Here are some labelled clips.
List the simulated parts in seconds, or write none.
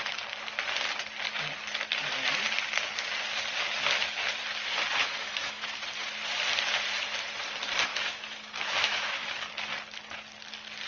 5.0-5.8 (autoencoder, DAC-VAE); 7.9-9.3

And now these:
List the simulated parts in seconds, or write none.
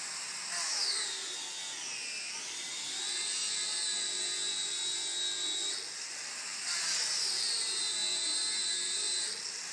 none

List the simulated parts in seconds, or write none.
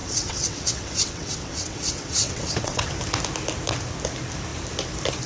0.0-2.9 (vocoder, WaveNeXt)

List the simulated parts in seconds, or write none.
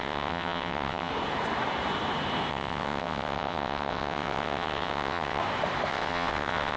0.0-1.1 (vocoder, WaveNeXt); 2.5-5.4; 5.9-6.8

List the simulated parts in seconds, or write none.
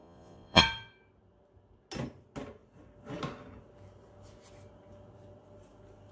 0.0-0.6 (vocoder, Vocos)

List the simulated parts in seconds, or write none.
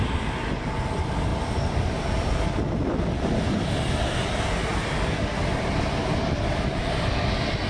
1.3-2.4 (vocoder, BigVGAN v2)